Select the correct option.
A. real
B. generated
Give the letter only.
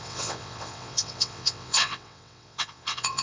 B